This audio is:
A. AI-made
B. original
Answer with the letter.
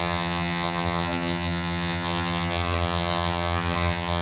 A